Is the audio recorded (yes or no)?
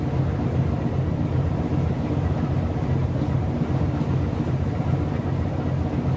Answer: yes